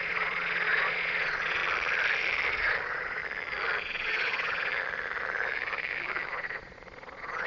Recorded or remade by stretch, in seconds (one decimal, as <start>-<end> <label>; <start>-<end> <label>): 0.0-1.6 remade; 1.6-2.5 recorded; 2.5-3.2 remade; 3.2-3.8 recorded; 3.8-4.7 remade; 4.7-6.3 recorded; 6.3-7.5 remade